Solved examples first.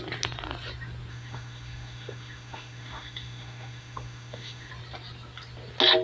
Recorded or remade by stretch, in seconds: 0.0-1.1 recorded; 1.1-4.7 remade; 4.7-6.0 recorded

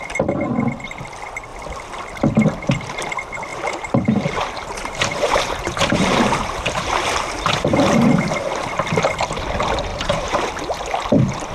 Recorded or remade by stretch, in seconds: 0.0-3.5 recorded; 3.5-8.1 remade; 8.1-9.9 recorded; 9.9-10.5 remade; 10.5-11.5 recorded

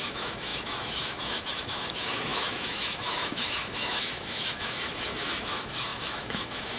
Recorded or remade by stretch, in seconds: 0.0-6.8 remade